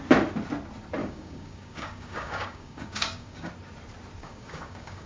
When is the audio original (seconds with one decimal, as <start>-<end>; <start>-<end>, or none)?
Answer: 0.0-1.0; 3.5-4.2